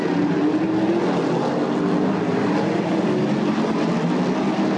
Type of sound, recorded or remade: recorded